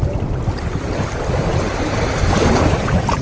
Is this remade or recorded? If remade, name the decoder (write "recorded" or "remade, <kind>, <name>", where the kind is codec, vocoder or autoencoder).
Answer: recorded